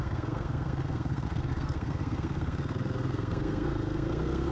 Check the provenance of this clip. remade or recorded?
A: remade